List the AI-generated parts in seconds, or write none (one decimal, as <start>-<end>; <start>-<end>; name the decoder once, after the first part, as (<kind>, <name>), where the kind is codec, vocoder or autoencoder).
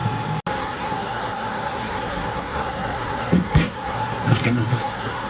0.6-5.3 (codec, SNAC)